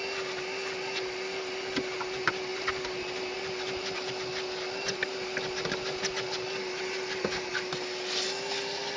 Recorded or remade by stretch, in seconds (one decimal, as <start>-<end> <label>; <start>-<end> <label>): 0.0-9.0 recorded